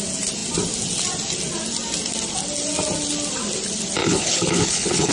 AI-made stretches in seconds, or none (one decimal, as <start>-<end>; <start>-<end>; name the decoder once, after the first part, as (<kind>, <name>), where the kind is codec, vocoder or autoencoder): 4.0-5.1 (codec, HILCodec)